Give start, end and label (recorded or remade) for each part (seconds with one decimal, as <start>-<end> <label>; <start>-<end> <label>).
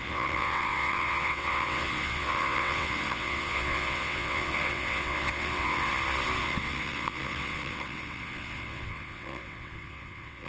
0.0-5.9 remade; 5.9-6.4 recorded; 6.4-10.5 remade